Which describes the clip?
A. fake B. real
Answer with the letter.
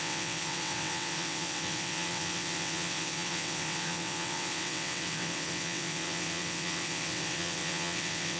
A